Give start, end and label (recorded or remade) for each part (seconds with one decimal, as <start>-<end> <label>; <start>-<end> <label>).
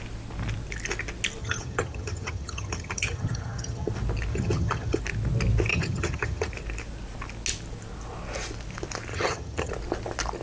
0.0-1.4 recorded; 1.4-3.9 remade; 3.9-4.3 recorded; 4.3-5.0 remade; 5.0-5.7 recorded; 5.7-6.5 remade; 6.5-9.1 recorded; 9.1-9.7 remade; 9.7-10.4 recorded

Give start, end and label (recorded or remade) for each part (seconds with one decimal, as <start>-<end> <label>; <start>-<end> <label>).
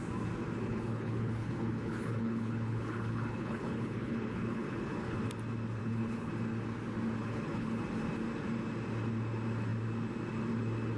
0.0-0.7 recorded; 0.7-5.2 remade; 5.2-5.8 recorded; 5.8-6.3 remade; 6.3-7.2 recorded; 7.2-7.8 remade; 7.8-11.0 recorded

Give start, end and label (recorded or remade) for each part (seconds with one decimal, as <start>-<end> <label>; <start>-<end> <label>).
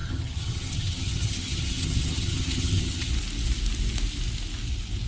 0.0-3.1 remade; 3.1-5.1 recorded